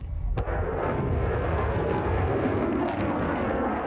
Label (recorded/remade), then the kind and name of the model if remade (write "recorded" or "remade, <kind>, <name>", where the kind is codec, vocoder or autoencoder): remade, codec, SNAC